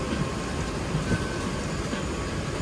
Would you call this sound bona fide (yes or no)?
yes